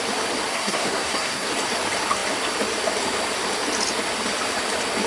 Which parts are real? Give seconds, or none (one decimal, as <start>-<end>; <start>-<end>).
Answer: 0.0-0.5; 1.5-5.1